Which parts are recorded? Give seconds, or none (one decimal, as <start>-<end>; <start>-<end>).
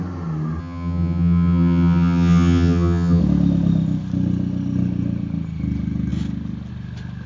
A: 0.0-0.6; 3.2-7.3